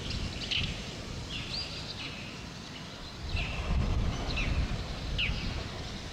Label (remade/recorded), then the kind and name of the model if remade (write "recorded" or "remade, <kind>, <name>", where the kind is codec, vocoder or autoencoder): recorded